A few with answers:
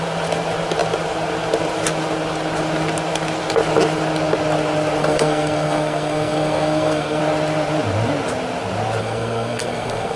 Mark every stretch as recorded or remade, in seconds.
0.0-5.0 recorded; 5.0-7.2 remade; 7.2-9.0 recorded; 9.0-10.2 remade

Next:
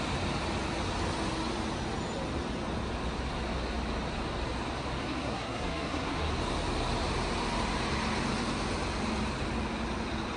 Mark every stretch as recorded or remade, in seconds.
0.0-5.0 recorded; 5.0-6.3 remade; 6.3-10.4 recorded

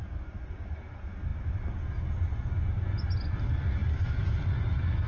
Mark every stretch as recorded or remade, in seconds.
0.0-5.1 recorded